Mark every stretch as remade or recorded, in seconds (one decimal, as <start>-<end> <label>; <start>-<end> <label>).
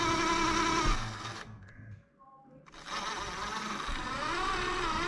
0.0-0.9 recorded; 0.9-1.7 remade; 1.7-5.1 recorded